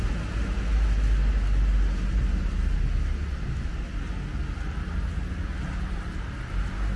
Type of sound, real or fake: real